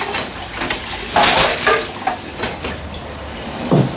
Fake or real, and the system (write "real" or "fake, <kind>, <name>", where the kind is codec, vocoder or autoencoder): real